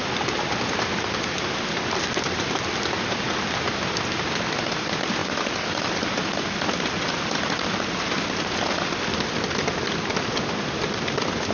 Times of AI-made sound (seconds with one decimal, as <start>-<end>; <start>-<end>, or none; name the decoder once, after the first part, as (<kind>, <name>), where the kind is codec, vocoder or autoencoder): 0.0-2.5 (vocoder, BigVGAN v2); 5.2-7.8